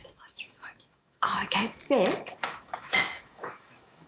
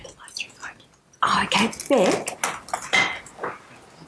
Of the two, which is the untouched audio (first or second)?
second